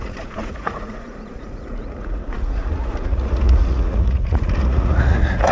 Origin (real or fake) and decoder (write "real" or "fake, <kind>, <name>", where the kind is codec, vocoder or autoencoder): fake, vocoder, Vocos